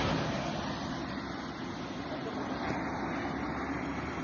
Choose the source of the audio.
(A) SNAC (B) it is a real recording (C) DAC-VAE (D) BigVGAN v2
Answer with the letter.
B